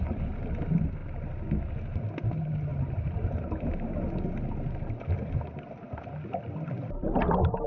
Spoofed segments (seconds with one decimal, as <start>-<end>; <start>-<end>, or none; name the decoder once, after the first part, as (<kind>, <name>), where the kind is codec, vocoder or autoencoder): none